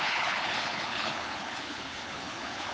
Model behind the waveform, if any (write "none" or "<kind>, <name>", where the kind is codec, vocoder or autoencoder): codec, HILCodec